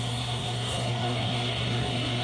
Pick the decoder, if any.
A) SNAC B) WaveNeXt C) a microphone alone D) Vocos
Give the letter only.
A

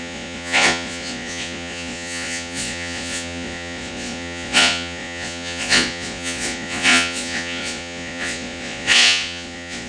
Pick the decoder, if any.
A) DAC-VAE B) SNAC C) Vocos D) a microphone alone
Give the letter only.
C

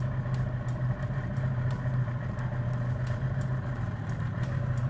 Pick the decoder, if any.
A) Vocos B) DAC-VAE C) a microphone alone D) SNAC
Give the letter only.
C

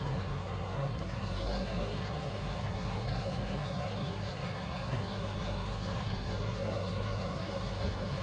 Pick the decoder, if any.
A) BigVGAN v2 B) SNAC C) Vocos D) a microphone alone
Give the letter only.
B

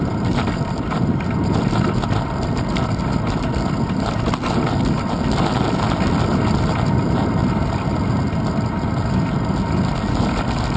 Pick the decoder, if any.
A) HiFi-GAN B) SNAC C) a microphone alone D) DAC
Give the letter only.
C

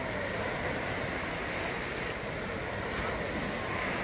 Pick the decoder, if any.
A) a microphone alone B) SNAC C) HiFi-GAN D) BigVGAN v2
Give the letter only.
A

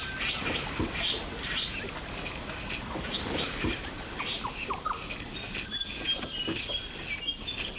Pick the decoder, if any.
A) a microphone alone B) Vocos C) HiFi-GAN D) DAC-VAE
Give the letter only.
A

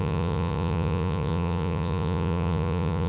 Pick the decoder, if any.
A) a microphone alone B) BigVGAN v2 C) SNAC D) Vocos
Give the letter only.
D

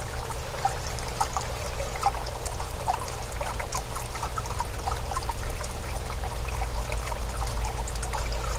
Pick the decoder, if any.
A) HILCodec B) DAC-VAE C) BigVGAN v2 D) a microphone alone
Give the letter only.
D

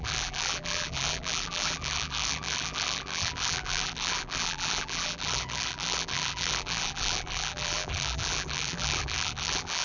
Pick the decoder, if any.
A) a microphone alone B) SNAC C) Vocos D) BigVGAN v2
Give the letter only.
D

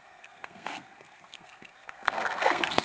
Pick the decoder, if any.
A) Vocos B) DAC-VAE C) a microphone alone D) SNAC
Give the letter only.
D